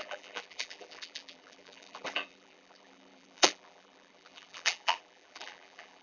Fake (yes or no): yes